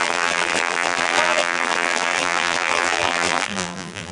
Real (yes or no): no